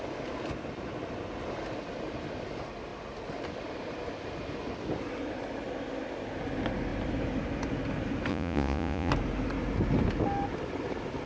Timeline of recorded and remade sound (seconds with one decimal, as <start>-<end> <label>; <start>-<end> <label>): 0.0-8.3 recorded; 8.3-9.1 remade; 9.1-11.3 recorded